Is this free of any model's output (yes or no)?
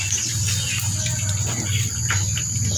yes